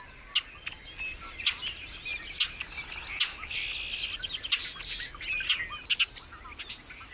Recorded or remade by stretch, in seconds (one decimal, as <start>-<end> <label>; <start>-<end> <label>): 0.0-7.1 recorded